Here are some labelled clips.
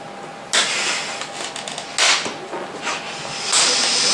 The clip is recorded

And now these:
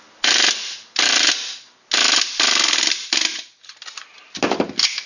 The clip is recorded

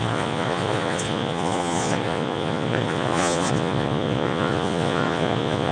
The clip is remade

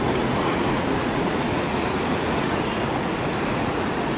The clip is remade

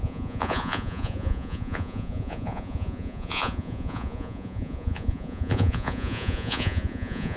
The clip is remade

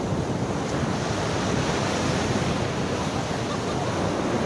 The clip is recorded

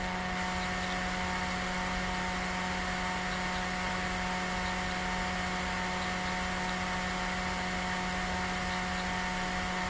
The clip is recorded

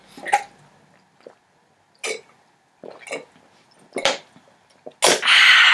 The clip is recorded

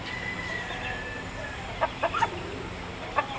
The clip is recorded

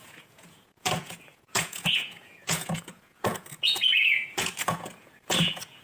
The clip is remade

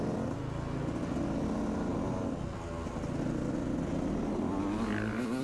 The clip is recorded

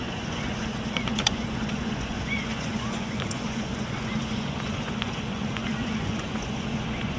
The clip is remade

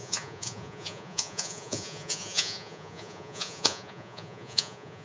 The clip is remade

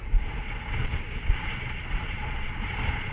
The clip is remade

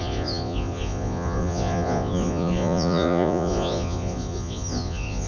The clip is remade